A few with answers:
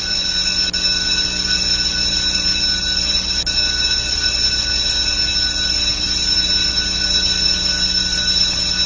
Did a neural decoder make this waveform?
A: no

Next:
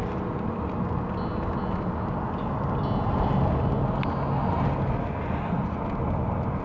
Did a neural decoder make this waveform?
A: no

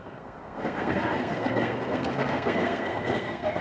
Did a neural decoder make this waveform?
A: yes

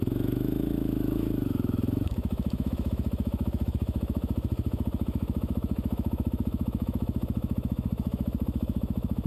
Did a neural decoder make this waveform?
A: yes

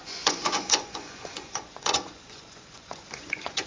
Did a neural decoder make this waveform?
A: yes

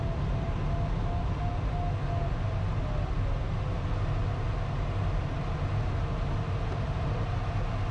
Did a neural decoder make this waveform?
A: no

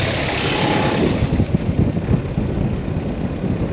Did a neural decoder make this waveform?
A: no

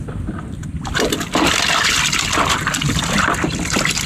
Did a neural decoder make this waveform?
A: no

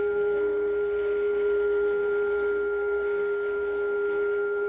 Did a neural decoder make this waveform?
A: yes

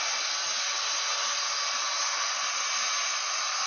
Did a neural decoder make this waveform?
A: no